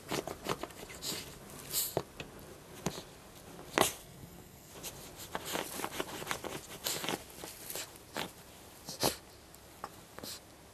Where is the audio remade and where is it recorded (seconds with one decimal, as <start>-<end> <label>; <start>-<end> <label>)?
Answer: 0.0-4.0 recorded; 4.0-4.7 remade; 4.7-10.7 recorded